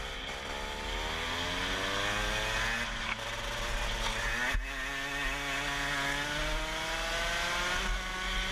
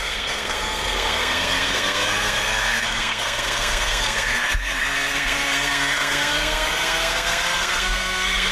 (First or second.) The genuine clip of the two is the first